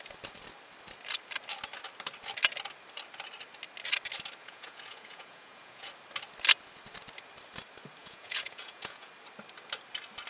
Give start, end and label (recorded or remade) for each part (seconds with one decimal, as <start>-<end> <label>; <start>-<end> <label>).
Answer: 0.0-4.4 recorded; 4.4-5.9 remade; 5.9-8.0 recorded; 8.0-9.1 remade; 9.1-10.3 recorded